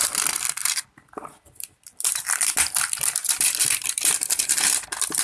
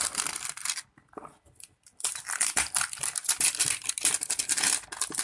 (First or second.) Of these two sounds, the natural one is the second